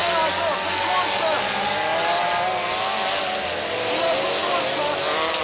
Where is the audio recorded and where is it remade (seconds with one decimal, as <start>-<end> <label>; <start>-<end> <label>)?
0.0-5.4 recorded